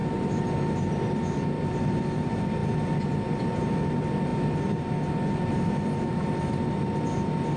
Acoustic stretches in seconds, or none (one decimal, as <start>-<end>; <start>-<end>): 0.0-7.6